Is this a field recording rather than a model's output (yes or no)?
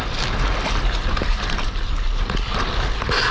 yes